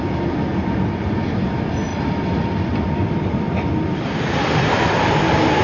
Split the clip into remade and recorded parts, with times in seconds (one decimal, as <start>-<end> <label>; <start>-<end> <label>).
0.0-1.9 recorded; 1.9-5.1 remade; 5.1-5.6 recorded